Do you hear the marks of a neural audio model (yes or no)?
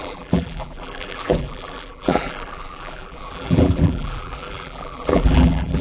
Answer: yes